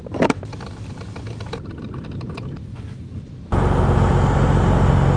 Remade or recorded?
recorded